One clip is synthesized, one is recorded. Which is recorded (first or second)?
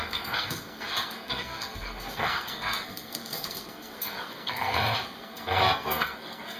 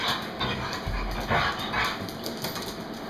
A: second